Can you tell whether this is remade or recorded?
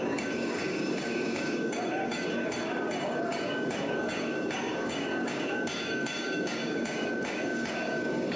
remade